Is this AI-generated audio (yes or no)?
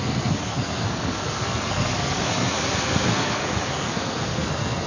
yes